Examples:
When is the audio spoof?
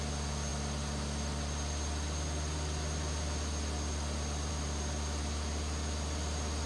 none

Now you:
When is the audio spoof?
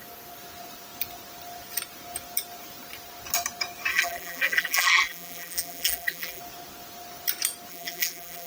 3.9-6.4 (vocoder, BigVGAN v2); 7.7-8.5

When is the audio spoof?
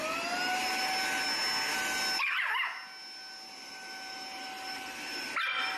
3.5-5.8 (vocoder, BigVGAN v2)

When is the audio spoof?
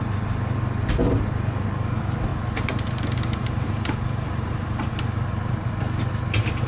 2.3-4.9 (vocoder, BigVGAN v2)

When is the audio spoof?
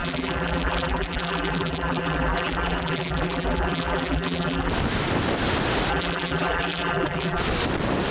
0.0-4.7 (vocoder, BigVGAN v2); 5.9-7.4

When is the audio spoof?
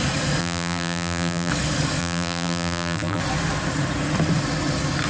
0.4-1.5 (vocoder, BigVGAN v2); 2.0-3.2